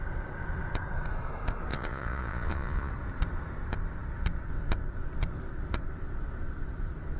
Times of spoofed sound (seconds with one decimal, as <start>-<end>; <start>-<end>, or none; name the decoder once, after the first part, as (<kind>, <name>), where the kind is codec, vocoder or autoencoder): 1.7-2.9 (vocoder, Vocos)